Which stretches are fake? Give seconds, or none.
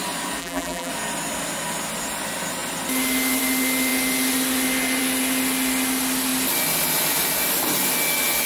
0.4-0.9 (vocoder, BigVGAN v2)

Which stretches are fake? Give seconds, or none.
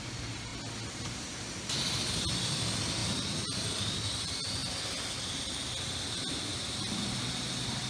3.0-3.9 (vocoder, BigVGAN v2); 6.5-7.2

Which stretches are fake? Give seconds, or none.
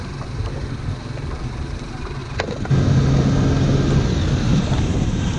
0.0-2.2 (vocoder, BigVGAN v2); 4.3-5.4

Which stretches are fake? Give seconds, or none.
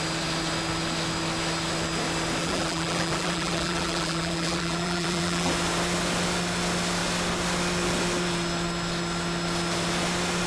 2.4-5.5 (vocoder, BigVGAN v2)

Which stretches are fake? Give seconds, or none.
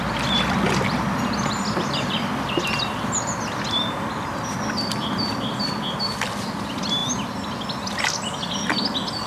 none